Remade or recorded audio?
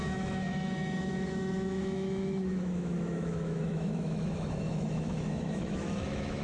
remade